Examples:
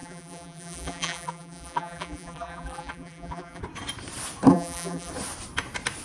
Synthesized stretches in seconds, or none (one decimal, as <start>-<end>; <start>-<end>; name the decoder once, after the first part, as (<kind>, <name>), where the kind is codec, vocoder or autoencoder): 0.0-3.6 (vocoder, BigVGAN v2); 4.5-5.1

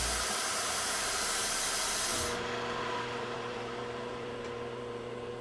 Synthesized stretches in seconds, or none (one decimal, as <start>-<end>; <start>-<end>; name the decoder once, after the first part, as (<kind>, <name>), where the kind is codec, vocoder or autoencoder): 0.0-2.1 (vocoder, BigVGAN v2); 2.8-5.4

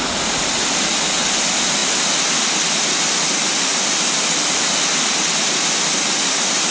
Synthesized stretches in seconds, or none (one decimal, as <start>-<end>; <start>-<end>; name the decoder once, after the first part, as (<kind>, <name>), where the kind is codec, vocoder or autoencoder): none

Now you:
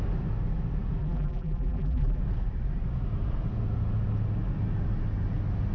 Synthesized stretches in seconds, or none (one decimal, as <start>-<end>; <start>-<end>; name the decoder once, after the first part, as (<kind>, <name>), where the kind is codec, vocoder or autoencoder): 1.0-2.2 (vocoder, BigVGAN v2)

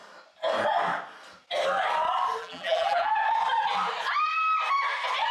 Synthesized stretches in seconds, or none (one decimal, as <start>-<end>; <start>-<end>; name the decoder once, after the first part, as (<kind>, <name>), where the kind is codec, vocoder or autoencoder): 2.4-3.1 (vocoder, BigVGAN v2)

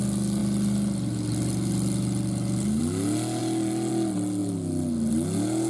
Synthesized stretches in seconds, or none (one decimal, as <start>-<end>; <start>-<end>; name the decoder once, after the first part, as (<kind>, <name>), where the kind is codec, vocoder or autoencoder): none

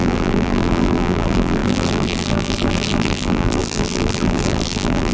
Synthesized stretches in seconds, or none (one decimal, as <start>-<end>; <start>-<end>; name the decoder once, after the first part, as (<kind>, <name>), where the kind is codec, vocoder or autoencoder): 0.0-5.1 (vocoder, BigVGAN v2)

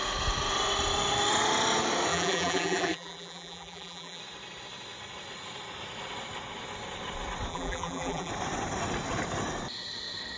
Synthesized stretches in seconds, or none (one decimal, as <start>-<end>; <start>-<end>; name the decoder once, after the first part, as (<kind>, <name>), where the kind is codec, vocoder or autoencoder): 2.1-4.2 (vocoder, BigVGAN v2); 7.5-8.3